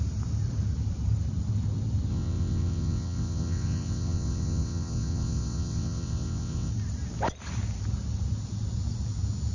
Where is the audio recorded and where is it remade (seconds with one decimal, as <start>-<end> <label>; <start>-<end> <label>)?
0.0-2.1 recorded; 2.1-6.7 remade; 6.7-9.5 recorded